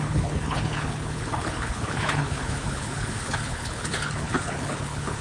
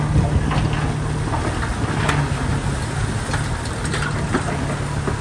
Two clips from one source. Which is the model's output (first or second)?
first